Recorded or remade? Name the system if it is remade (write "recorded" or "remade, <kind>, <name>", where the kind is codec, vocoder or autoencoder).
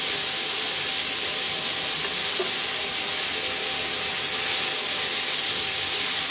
recorded